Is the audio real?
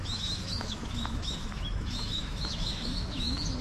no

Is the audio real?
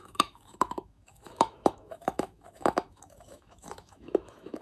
no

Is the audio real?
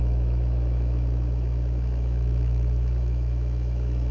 no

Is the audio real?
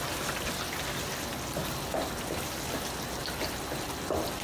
yes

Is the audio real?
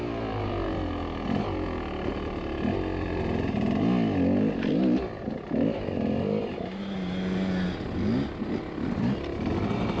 yes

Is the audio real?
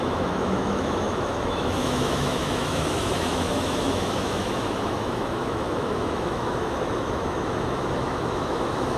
no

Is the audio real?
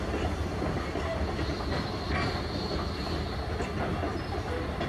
yes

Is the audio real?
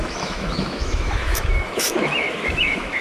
no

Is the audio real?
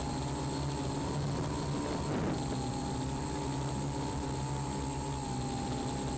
yes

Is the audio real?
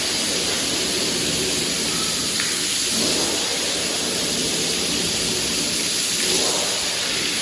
yes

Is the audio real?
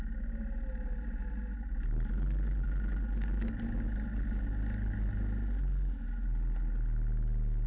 yes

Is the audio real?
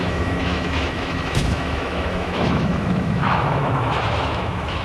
no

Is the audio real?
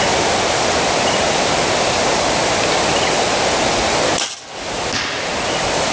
yes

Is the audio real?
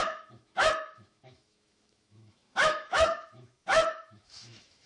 no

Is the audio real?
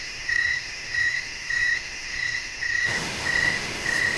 no